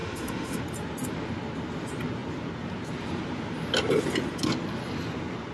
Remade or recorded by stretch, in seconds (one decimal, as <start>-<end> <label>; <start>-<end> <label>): 0.0-0.6 remade; 0.6-5.5 recorded